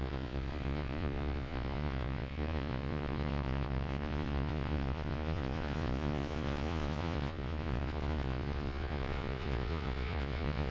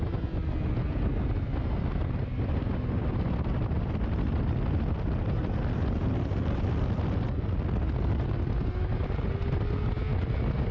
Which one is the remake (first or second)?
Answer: first